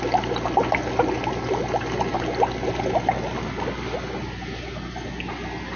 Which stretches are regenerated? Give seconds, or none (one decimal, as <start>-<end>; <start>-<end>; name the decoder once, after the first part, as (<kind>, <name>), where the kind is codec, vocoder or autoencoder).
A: none